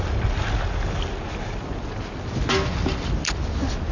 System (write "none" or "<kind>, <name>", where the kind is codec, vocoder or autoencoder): none